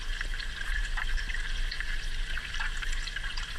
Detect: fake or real real